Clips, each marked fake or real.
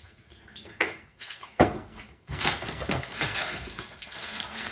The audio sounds fake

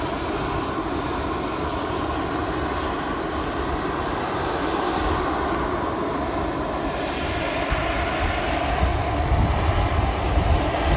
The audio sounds real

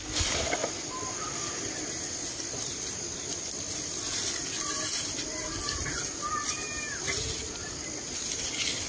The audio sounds real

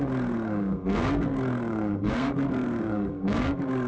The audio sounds fake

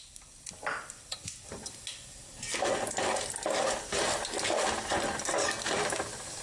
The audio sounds real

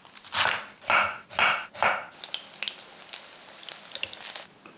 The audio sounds real